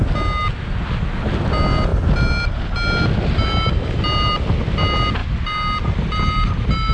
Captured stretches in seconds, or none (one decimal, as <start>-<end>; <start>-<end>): 0.0-6.9